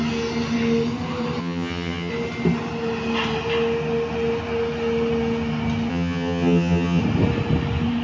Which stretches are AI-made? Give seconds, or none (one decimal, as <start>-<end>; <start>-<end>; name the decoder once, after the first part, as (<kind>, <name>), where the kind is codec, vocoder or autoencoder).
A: 1.4-2.1 (vocoder, HiFi-GAN); 5.9-7.0